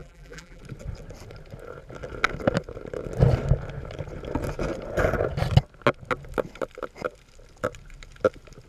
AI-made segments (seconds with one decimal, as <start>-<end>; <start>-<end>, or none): 0.0-0.6